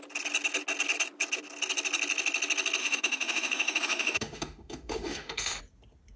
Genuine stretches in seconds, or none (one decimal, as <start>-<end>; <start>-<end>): 0.0-2.8; 5.6-6.2